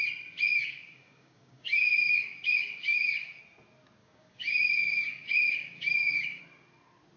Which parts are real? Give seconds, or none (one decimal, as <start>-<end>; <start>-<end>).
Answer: 0.0-0.5; 3.4-4.0; 6.4-7.2